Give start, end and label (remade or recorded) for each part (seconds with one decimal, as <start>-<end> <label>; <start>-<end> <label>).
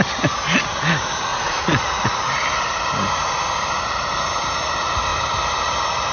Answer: 0.0-1.3 recorded; 1.3-2.2 remade; 2.2-6.1 recorded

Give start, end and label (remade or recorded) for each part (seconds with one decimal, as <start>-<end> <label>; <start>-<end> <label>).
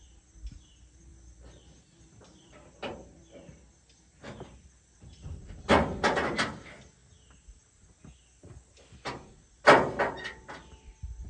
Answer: 0.0-1.1 recorded; 1.1-5.6 remade; 5.6-11.3 recorded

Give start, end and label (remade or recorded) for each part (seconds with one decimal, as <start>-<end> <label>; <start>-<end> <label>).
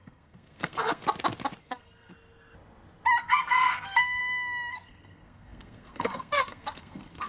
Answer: 0.0-1.0 remade; 1.0-1.6 recorded; 1.6-2.1 remade; 2.1-3.2 recorded; 3.2-4.2 remade; 4.2-4.7 recorded; 4.7-7.3 remade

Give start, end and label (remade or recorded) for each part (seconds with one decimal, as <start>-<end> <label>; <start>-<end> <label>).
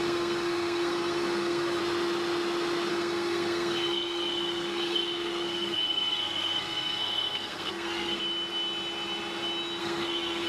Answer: 0.0-1.8 remade; 1.8-2.9 recorded; 2.9-8.2 remade; 8.2-9.8 recorded; 9.8-10.5 remade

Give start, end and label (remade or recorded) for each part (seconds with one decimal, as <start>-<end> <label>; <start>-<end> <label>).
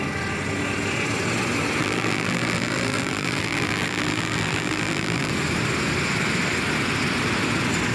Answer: 0.0-1.8 recorded; 1.8-5.3 remade; 5.3-7.9 recorded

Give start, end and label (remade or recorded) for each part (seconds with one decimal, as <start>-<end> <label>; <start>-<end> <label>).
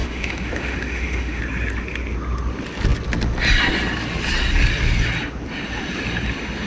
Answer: 0.0-1.4 remade; 1.4-6.7 recorded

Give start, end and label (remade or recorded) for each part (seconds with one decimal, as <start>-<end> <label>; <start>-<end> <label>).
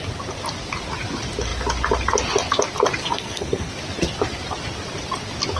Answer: 0.0-3.0 recorded; 3.0-3.7 remade; 3.7-5.6 recorded